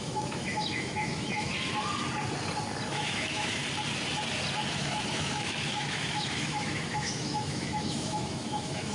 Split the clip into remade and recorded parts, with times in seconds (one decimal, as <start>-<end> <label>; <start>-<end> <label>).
0.0-1.5 remade; 1.5-2.9 recorded; 2.9-3.6 remade; 3.6-4.7 recorded; 4.7-8.9 remade